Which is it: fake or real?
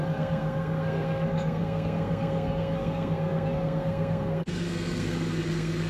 fake